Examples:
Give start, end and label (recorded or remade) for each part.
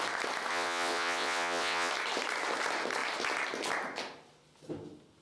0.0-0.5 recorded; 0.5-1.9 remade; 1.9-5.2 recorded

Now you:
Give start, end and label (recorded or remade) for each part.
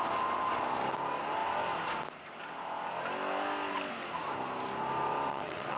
0.0-5.3 recorded; 5.3-5.8 remade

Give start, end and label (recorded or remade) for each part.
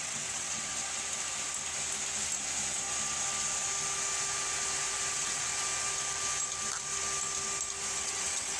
0.0-0.7 remade; 0.7-5.1 recorded; 5.1-5.5 remade; 5.5-8.0 recorded; 8.0-8.6 remade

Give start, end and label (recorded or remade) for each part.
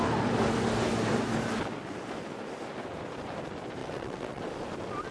0.0-3.8 recorded; 3.8-4.4 remade; 4.4-5.1 recorded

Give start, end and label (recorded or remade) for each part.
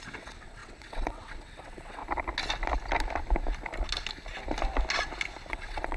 0.0-2.0 remade; 2.0-5.5 recorded; 5.5-6.0 remade